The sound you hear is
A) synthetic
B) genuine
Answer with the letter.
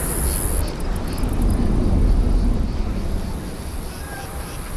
B